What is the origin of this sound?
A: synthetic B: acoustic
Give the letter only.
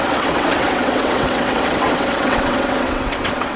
A